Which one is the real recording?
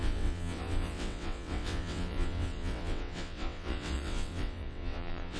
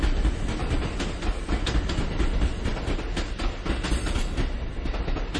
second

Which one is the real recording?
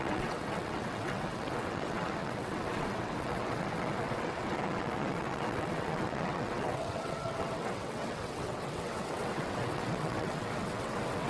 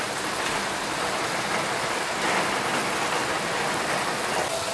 second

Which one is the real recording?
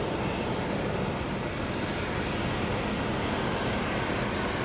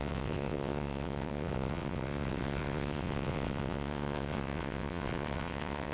first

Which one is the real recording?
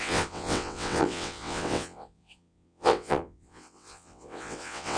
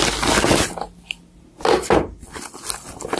second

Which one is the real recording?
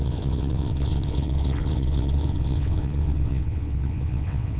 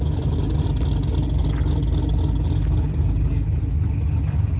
second